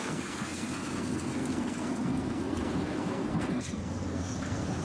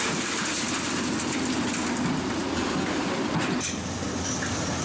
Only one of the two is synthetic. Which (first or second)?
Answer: first